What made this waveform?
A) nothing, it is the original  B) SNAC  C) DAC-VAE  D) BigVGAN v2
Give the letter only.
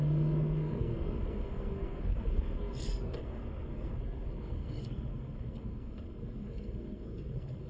B